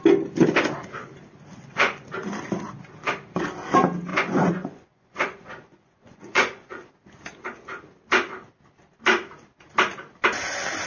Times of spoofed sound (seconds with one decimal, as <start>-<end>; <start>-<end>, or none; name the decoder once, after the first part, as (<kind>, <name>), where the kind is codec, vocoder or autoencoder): 1.5-2.0 (vocoder, Vocos); 4.1-6.9